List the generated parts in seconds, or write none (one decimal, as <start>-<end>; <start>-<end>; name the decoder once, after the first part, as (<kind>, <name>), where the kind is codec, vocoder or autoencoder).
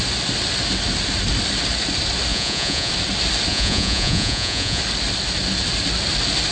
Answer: 2.3-2.9 (vocoder, Vocos); 3.5-4.8